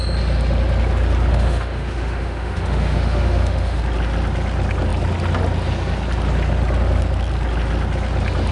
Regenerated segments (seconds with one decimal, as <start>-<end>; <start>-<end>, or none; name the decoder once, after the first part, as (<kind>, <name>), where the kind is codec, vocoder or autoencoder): 1.3-3.8 (autoencoder, DAC-VAE)